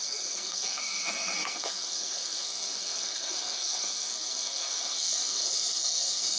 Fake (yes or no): yes